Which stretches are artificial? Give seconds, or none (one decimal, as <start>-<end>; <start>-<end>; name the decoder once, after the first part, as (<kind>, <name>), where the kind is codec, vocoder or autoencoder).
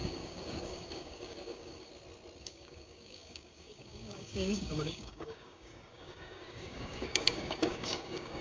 0.0-1.9 (codec, DAC); 2.4-8.4